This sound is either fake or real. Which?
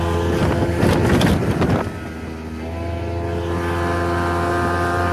real